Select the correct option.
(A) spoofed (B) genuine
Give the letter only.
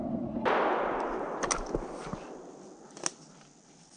B